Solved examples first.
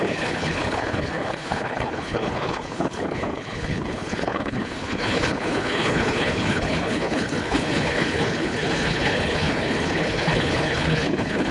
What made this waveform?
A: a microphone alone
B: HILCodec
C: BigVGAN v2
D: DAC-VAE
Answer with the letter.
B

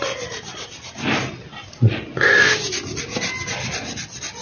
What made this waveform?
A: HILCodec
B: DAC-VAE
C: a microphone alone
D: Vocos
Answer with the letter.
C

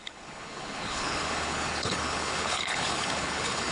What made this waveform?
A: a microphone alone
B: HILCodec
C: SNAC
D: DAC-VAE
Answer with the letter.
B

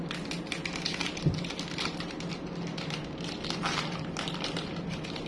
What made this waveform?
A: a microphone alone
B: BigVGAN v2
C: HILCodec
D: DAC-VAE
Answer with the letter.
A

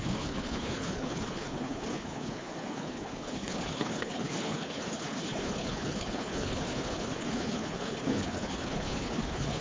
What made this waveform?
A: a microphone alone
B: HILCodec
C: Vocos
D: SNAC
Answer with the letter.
B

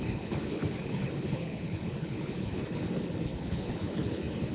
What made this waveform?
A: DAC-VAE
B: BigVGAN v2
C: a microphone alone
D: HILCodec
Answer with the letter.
D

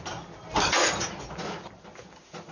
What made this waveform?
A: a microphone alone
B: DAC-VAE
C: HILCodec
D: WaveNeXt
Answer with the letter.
A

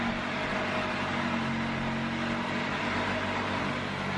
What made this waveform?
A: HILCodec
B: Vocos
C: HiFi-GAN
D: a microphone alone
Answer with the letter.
D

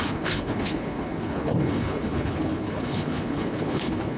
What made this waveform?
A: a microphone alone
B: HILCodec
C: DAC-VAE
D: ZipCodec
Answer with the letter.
B